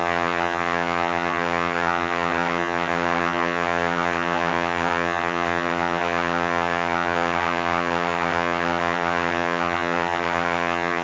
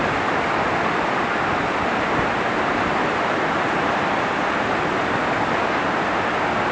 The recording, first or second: second